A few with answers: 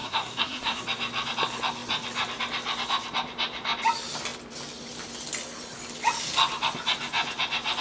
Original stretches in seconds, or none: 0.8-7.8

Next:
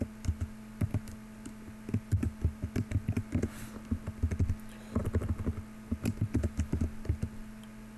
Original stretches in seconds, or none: 0.0-8.0

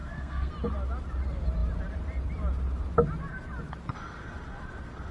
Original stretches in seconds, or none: 0.5-5.1

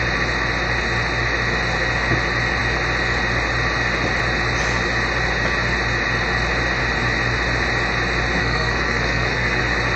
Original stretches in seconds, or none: 0.0-8.4; 9.6-10.0